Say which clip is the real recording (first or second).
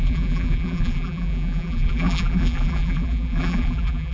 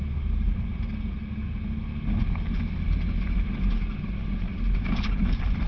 second